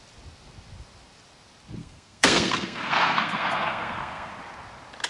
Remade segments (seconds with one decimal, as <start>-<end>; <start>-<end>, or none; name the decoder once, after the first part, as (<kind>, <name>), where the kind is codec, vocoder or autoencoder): 1.8-4.3 (codec, SNAC)